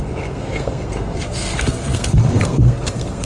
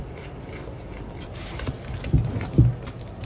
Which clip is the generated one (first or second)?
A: first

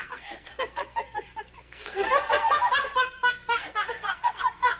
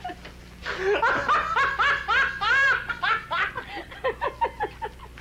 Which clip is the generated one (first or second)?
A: first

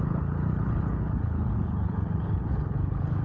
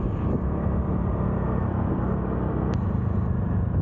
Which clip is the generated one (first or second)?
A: first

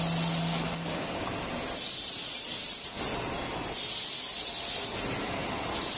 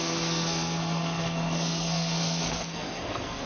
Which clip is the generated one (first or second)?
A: second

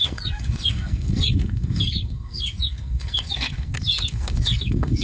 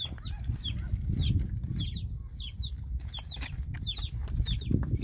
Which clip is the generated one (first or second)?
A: first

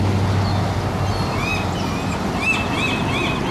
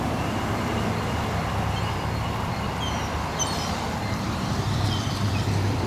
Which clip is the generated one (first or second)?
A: second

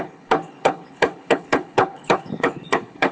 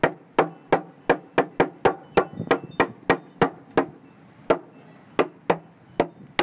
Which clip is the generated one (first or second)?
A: first